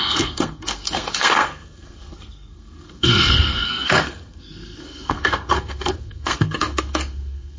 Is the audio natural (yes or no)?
no